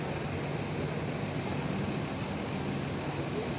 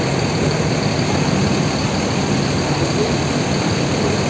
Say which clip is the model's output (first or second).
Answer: second